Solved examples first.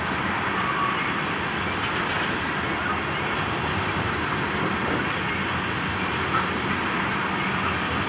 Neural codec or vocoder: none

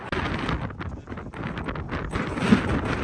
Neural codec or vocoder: none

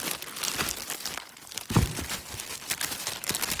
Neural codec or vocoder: none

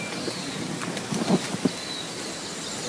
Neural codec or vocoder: none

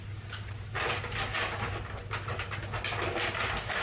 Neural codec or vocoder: none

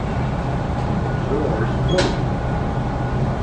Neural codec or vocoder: none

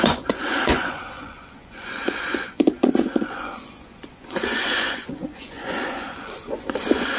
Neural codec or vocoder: vocoder, Vocos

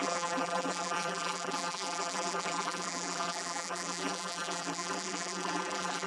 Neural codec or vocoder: vocoder, BigVGAN v2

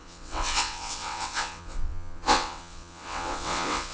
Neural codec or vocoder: vocoder, WaveNeXt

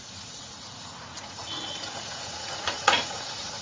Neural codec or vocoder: vocoder, Vocos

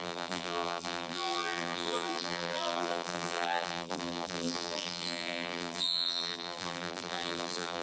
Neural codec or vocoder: vocoder, BigVGAN v2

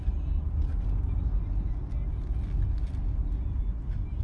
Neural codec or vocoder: none